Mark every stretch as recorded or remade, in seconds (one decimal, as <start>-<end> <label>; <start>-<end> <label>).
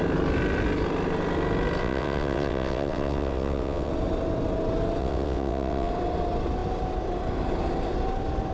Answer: 0.0-1.8 recorded; 1.8-3.9 remade; 3.9-5.0 recorded; 5.0-5.9 remade; 5.9-8.5 recorded